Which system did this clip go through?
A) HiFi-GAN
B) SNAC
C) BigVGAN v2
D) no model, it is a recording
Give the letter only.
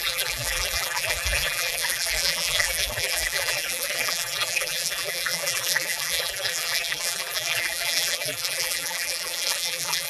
C